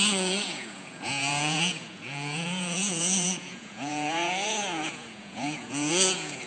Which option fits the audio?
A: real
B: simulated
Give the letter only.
B